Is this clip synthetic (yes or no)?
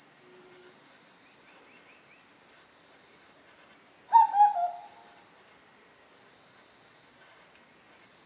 no